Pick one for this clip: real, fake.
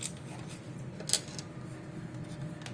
real